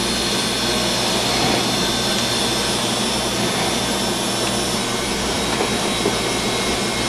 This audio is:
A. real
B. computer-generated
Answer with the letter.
A